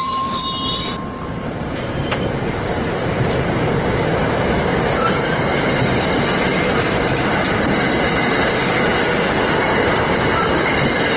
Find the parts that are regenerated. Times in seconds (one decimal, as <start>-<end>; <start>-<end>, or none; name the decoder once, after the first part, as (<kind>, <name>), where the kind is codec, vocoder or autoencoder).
0.0-11.2 (vocoder, BigVGAN v2)